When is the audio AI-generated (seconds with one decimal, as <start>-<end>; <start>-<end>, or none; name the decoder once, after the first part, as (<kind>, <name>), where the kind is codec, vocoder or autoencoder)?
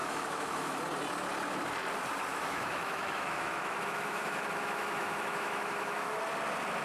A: 0.0-0.8 (autoencoder, DAC-VAE); 2.3-6.2